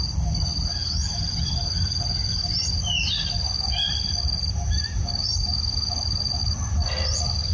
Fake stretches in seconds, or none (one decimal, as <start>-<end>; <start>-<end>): none